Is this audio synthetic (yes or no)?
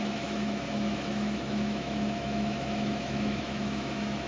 yes